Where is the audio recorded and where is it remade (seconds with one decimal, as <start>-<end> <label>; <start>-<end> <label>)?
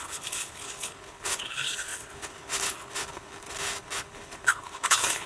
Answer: 0.0-5.3 remade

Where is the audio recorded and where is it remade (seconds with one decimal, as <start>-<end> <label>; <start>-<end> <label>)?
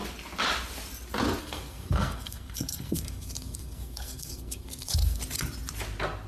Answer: 0.0-1.4 recorded; 1.4-5.2 remade; 5.2-6.3 recorded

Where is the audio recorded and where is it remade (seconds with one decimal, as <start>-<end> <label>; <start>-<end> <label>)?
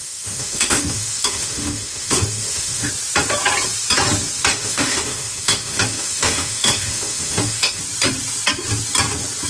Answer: 0.0-2.9 remade; 2.9-4.5 recorded; 4.5-7.8 remade; 7.8-9.5 recorded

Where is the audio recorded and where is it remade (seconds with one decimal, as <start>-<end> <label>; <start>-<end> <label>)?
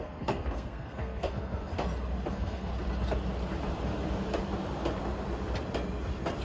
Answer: 0.0-1.7 remade; 1.7-2.3 recorded; 2.3-2.7 remade; 2.7-6.4 recorded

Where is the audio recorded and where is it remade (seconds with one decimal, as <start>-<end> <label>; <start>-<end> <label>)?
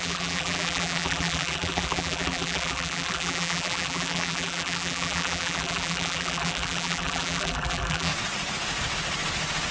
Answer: 0.0-8.1 remade; 8.1-9.7 recorded